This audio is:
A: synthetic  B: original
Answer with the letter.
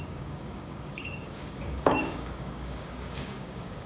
A